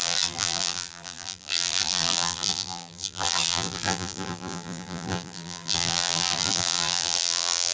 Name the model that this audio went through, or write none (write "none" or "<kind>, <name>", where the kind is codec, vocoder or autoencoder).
vocoder, BigVGAN v2